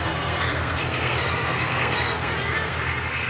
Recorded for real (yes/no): no